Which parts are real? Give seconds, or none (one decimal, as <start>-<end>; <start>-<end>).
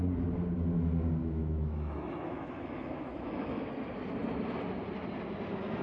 0.0-1.2; 3.6-5.8